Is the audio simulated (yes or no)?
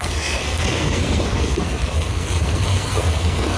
yes